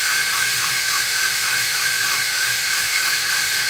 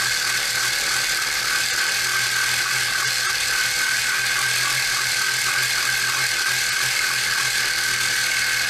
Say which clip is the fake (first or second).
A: first